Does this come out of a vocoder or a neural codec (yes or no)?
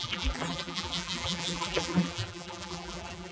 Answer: yes